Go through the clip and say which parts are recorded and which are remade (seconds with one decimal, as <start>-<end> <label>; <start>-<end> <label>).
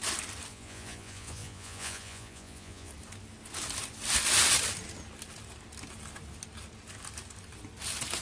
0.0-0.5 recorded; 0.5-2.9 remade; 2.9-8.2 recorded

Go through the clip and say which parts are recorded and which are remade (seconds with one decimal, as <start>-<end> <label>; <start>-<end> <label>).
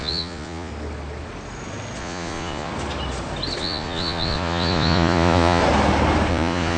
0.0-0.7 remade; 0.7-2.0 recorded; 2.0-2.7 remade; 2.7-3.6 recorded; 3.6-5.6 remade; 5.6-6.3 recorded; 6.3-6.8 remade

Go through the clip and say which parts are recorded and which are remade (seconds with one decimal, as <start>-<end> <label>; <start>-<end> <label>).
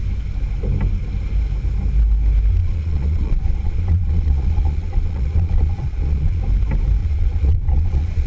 0.0-2.6 recorded; 2.6-6.4 remade; 6.4-7.0 recorded; 7.0-8.3 remade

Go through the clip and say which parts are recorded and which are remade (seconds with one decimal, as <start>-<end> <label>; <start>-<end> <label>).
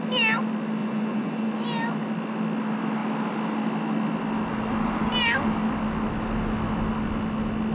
0.0-0.8 recorded; 0.8-1.5 remade; 1.5-7.7 recorded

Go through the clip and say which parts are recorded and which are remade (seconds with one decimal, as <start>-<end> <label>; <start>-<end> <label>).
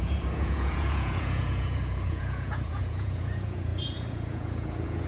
0.0-5.1 remade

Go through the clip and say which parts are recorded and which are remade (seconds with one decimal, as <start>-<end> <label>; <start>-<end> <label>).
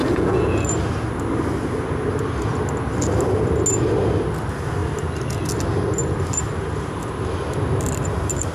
0.0-0.5 remade; 0.5-8.5 recorded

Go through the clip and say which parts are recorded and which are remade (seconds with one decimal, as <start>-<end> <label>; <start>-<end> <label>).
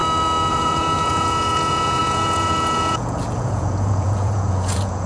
0.0-0.5 recorded; 0.5-5.1 remade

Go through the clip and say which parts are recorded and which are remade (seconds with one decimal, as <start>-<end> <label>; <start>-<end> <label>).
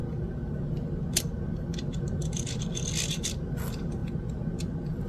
0.0-5.1 recorded